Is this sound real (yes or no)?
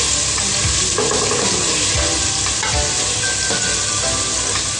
yes